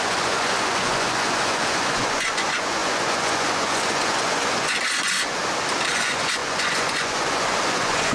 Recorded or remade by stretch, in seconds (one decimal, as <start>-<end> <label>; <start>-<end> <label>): 0.0-5.4 remade; 5.4-5.9 recorded; 5.9-8.1 remade